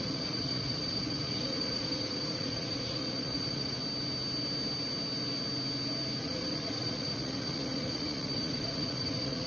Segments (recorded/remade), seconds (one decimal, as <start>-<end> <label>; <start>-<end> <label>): 0.0-3.8 remade; 3.8-6.2 recorded; 6.2-9.5 remade